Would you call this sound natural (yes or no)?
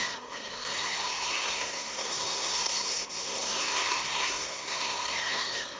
no